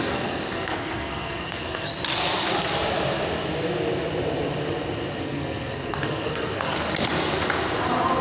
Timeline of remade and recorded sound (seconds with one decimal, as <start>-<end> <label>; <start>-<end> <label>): 0.0-1.9 remade; 1.9-5.2 recorded; 5.2-6.7 remade; 6.7-8.2 recorded